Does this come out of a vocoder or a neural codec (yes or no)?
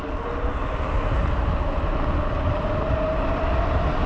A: no